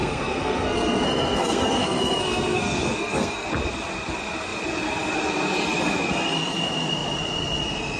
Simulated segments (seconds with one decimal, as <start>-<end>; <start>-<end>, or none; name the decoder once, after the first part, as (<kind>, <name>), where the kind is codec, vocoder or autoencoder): 0.0-3.5 (codec, SNAC)